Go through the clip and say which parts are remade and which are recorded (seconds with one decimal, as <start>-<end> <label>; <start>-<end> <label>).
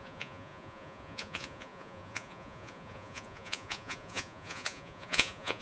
0.0-5.6 remade